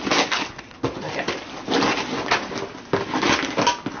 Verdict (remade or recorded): recorded